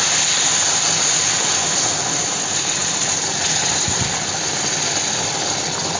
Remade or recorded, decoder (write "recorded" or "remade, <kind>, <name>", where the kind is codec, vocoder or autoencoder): recorded